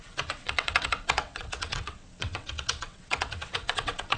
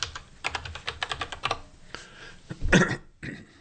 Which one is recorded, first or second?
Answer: second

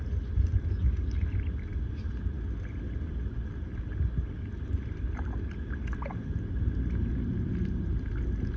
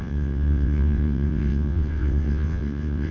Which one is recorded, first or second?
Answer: first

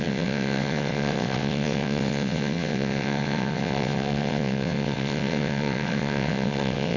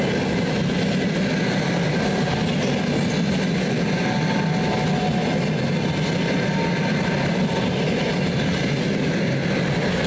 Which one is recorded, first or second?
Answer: second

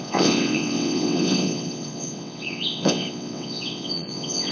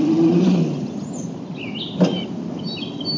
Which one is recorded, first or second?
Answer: second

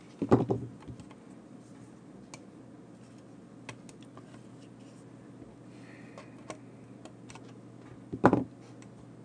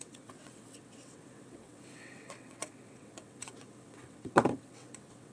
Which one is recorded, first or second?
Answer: first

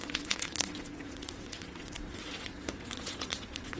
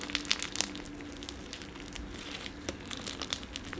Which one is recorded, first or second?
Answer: second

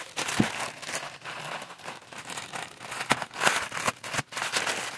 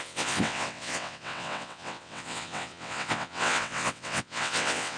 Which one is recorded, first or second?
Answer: first